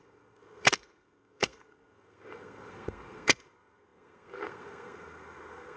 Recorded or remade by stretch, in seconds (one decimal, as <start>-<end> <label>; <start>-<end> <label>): 0.0-5.8 remade